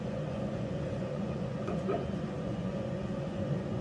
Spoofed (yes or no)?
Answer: yes